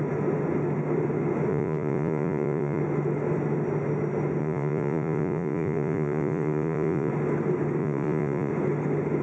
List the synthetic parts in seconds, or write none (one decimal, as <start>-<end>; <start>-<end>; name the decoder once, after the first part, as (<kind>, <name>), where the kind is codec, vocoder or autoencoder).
1.5-2.8 (vocoder, Vocos); 4.4-7.1; 7.8-8.5